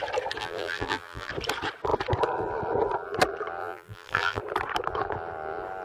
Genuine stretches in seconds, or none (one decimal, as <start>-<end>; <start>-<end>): 0.0-0.4; 1.3-3.6; 4.4-5.8